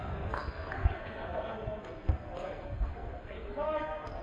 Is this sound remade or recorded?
remade